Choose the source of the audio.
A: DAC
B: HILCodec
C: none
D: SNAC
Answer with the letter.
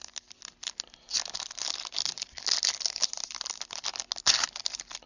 C